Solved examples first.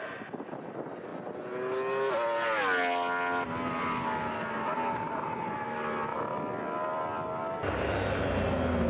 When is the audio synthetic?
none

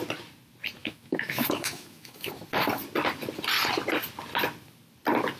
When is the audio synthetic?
0.8-2.3 (autoencoder, DAC-VAE)

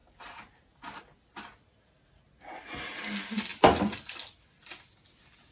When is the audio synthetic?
0.0-1.0 (vocoder, BigVGAN v2)

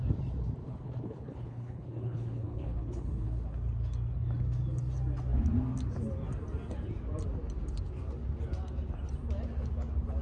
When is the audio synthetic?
0.6-3.3 (codec, HILCodec)

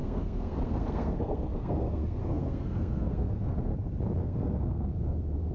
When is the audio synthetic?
0.0-3.7 (codec, SNAC); 4.2-5.5